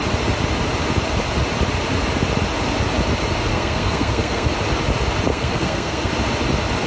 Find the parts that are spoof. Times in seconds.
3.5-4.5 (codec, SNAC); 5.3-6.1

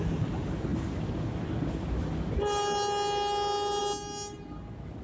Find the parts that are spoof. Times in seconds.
none